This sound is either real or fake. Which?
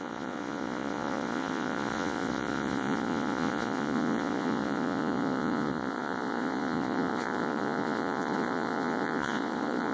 fake